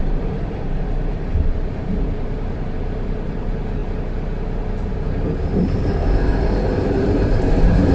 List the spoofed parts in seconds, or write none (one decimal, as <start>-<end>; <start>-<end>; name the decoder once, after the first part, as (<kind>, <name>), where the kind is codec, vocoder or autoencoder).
0.0-3.8 (vocoder, BigVGAN v2); 5.4-7.9